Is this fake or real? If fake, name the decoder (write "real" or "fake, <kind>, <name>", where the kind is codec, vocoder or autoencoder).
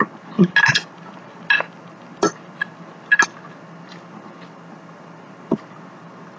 real